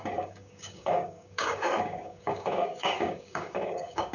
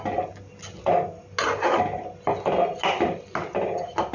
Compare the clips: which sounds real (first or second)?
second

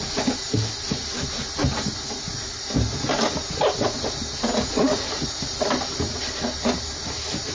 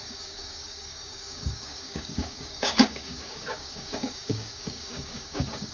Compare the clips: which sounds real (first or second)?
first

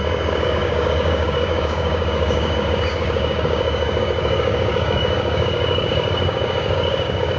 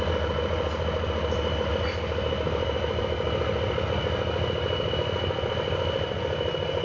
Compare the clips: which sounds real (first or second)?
second